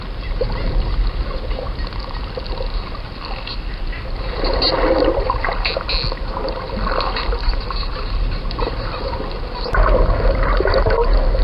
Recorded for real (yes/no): yes